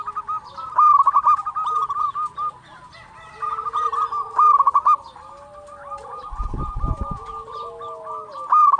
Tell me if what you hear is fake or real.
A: real